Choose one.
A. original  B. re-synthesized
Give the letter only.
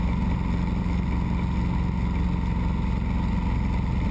A